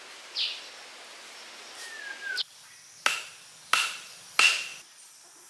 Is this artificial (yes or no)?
no